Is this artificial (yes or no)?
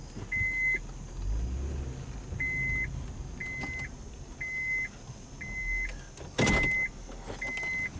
no